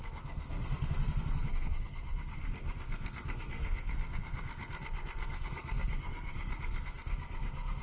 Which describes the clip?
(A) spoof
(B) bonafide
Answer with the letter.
A